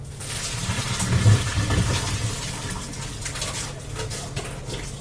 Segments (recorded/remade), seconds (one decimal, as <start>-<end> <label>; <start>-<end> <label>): 0.0-5.0 recorded